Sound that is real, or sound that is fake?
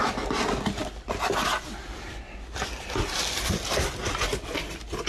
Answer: real